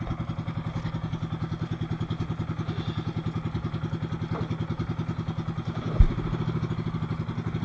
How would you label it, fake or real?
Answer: real